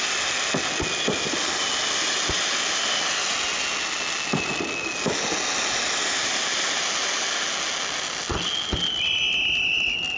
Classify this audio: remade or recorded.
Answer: recorded